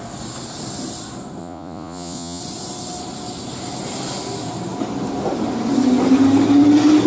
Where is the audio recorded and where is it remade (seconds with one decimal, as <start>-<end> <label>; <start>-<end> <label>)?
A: 0.0-1.4 recorded; 1.4-2.4 remade; 2.4-7.1 recorded